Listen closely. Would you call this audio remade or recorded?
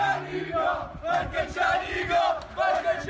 recorded